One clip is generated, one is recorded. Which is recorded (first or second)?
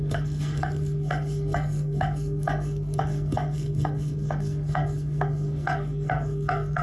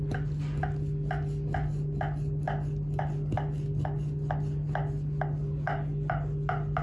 second